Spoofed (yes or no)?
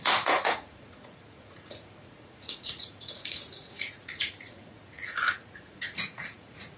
yes